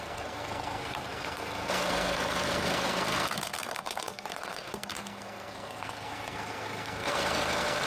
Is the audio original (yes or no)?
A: no